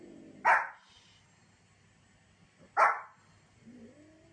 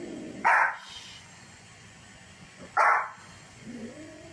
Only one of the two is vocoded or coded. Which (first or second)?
second